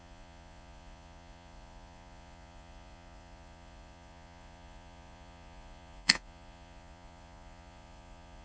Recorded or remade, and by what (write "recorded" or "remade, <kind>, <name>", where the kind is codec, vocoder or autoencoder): remade, vocoder, Vocos